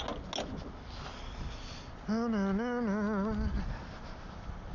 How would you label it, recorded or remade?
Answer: recorded